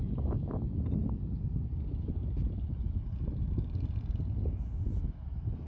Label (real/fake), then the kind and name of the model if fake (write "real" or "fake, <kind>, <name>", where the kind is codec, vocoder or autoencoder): real